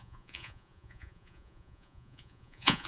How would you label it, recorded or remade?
remade